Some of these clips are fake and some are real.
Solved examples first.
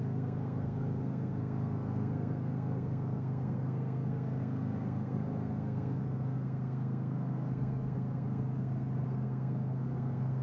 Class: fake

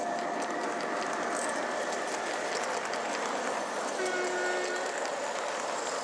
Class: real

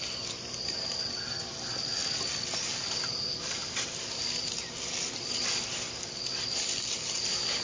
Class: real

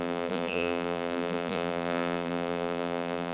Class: fake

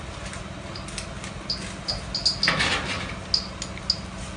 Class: real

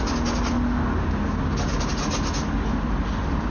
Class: real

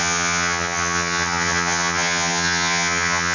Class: fake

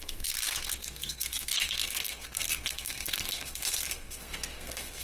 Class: fake